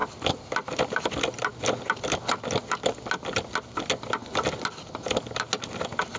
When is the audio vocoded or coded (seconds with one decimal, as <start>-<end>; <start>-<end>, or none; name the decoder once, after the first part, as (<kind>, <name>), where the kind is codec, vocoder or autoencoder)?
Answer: none